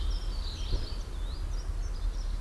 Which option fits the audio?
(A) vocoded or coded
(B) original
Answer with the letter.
B